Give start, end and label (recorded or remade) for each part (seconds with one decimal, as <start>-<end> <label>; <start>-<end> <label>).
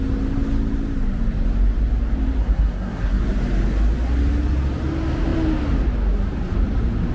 0.0-2.4 recorded; 2.4-3.2 remade; 3.2-7.1 recorded